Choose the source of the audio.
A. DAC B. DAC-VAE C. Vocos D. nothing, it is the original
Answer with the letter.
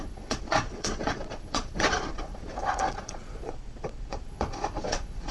C